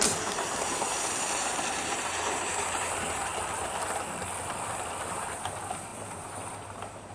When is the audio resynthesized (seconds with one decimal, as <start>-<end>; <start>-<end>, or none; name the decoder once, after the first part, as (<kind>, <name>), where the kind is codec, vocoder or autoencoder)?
0.0-3.3 (vocoder, BigVGAN v2); 5.1-7.1